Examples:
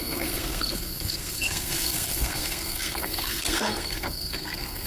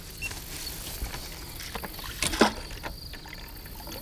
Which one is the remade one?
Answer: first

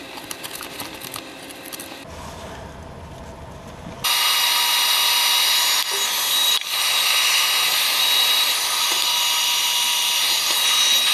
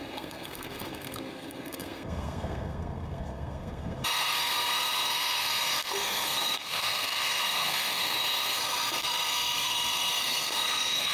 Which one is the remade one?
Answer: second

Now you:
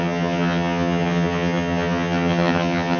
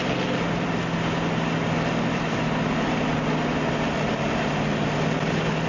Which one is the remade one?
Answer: first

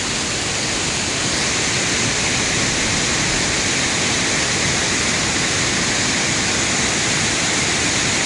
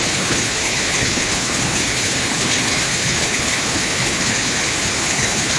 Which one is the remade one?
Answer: second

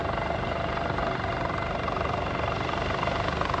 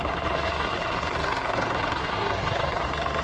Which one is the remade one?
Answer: second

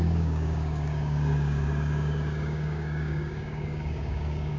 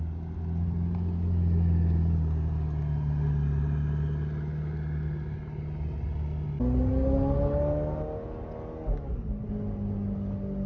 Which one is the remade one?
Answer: first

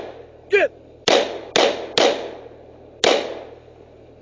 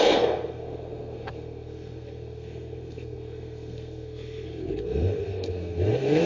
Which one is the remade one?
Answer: second